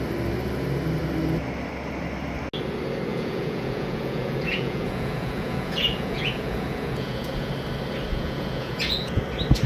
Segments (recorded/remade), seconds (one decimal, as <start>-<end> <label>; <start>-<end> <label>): 0.0-3.1 recorded; 3.1-7.5 remade; 7.5-8.1 recorded; 8.1-9.2 remade; 9.2-9.7 recorded